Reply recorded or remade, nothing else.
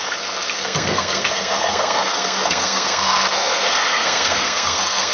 remade